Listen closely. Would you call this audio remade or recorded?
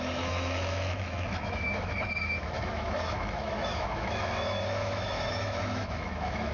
remade